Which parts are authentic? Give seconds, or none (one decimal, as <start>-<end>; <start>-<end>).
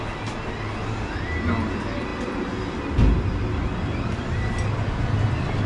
0.0-5.7